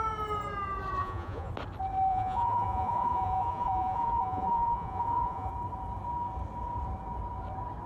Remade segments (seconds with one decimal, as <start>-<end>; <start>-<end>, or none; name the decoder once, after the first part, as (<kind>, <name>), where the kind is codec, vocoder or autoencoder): 1.0-1.5 (vocoder, Vocos); 2.1-5.5